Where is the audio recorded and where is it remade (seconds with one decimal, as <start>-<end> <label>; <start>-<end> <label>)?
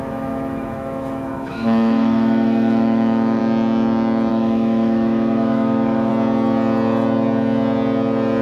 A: 0.0-3.4 remade; 3.4-4.3 recorded; 4.3-6.1 remade; 6.1-8.4 recorded